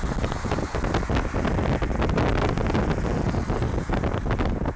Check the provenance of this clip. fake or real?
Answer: real